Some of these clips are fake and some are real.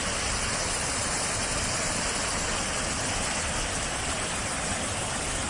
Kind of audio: real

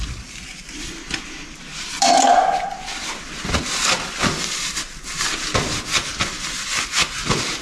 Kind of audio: real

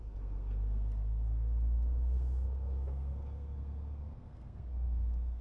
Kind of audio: fake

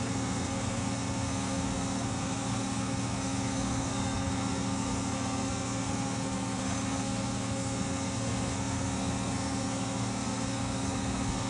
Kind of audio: fake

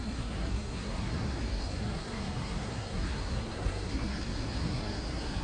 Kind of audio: fake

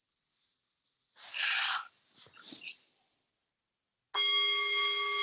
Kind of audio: real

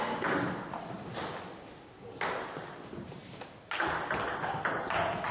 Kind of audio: real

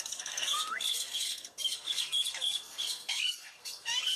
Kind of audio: fake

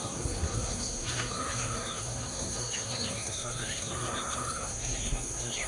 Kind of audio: fake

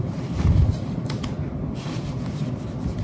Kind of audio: real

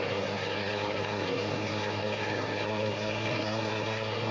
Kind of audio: fake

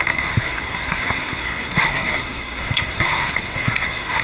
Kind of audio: fake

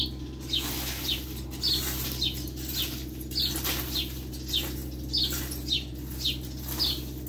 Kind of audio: real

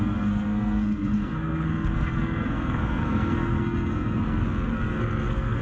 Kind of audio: fake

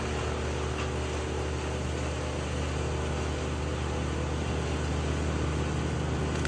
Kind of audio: real